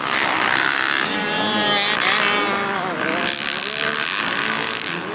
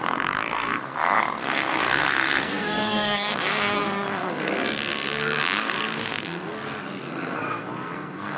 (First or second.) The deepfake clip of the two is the second